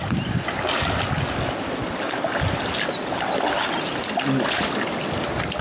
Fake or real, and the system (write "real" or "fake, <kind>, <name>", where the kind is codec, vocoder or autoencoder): real